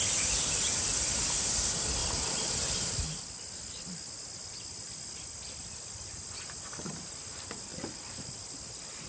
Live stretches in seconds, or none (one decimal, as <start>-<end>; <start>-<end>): 0.0-9.1